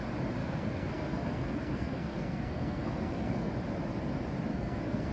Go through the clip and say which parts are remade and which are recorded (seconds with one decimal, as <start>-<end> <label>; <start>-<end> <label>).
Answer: 0.0-0.4 recorded; 0.4-3.5 remade; 3.5-4.5 recorded; 4.5-5.1 remade

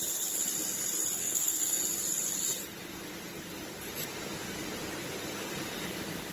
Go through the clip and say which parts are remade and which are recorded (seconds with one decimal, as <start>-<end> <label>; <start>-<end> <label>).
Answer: 0.0-1.2 recorded; 1.2-1.8 remade; 1.8-6.3 recorded

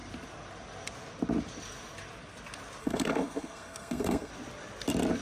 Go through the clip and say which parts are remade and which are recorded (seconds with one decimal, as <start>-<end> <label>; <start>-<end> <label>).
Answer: 0.0-2.8 recorded; 2.8-4.3 remade; 4.3-5.2 recorded

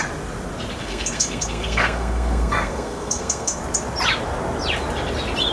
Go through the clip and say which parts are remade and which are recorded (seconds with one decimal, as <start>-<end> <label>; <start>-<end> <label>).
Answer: 0.0-0.8 recorded; 0.8-3.6 remade; 3.6-5.5 recorded

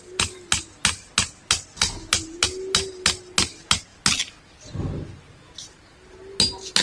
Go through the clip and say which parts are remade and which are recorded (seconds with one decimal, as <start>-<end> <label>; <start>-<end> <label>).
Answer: 0.0-6.8 recorded

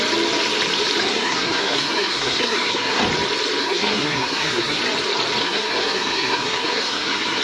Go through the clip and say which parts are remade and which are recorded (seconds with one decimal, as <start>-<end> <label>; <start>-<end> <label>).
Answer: 0.0-1.1 recorded; 1.1-3.0 remade; 3.0-3.6 recorded; 3.6-4.8 remade; 4.8-5.4 recorded; 5.4-7.4 remade